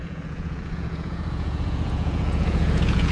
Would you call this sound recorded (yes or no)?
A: no